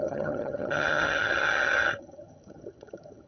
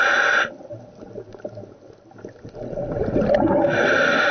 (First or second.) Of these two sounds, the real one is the second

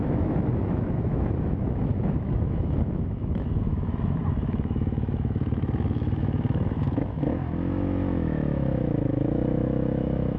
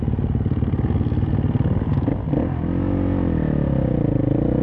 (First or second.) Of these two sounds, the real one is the second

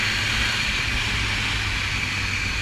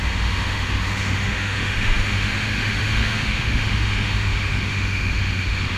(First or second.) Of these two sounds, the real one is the first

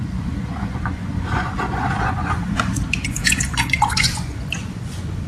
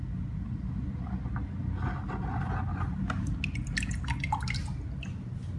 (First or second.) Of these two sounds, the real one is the second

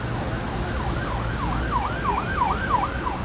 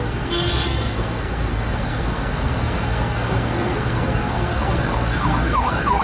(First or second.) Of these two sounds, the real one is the first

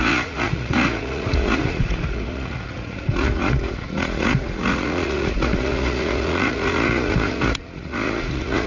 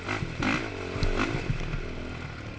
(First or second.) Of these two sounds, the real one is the second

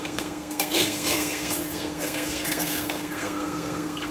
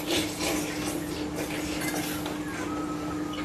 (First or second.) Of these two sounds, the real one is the second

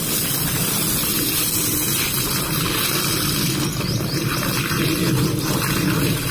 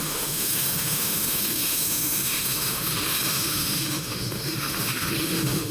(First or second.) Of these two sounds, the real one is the first